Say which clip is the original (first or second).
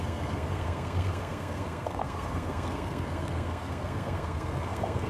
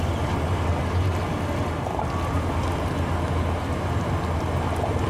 second